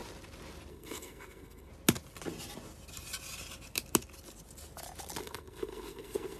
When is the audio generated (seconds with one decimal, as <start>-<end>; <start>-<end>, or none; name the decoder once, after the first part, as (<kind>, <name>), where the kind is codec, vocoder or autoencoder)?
0.7-1.7 (codec, SNAC); 5.2-6.4